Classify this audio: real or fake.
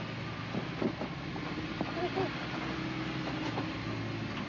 real